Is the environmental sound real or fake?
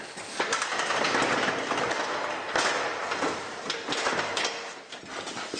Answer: real